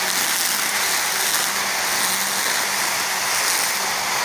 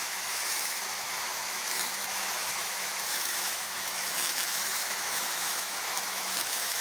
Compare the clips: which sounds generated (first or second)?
second